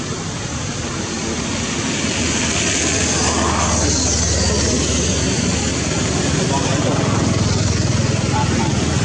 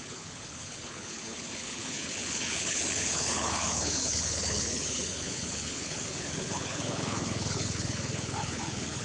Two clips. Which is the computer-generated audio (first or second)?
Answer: second